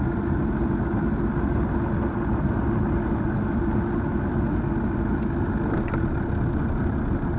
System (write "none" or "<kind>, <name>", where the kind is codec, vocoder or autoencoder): none